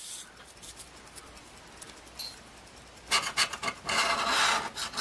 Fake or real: fake